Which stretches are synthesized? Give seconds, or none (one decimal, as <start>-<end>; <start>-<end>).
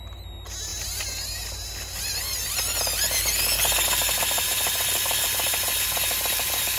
none